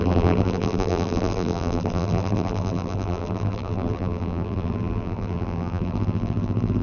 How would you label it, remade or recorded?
remade